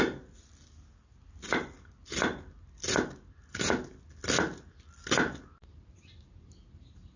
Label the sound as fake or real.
real